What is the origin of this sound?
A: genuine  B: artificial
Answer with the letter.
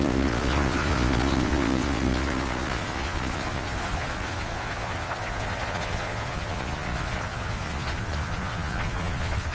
B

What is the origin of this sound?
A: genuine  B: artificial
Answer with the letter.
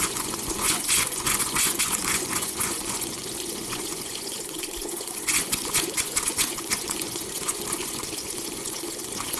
B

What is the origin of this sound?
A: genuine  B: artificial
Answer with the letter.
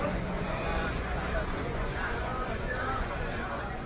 B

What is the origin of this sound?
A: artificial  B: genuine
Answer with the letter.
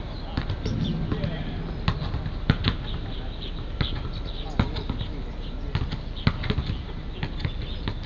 B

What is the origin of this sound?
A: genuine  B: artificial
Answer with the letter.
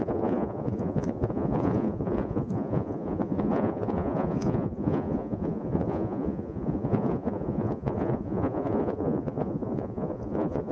B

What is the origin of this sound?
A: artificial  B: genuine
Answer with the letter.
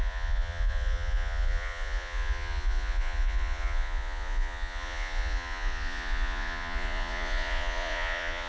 A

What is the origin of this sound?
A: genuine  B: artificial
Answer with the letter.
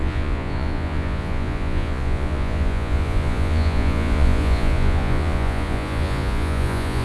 B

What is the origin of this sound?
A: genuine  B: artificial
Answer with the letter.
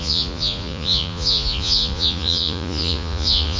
B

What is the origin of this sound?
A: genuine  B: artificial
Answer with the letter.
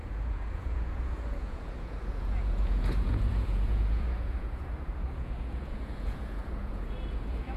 B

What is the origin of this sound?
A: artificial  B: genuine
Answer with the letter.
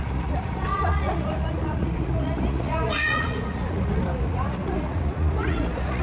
A